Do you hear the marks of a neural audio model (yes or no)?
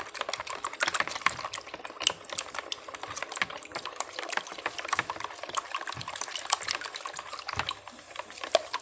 no